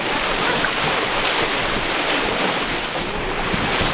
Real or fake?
fake